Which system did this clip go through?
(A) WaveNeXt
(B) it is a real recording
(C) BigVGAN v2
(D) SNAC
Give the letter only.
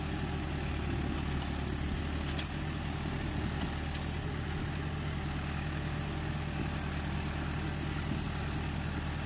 B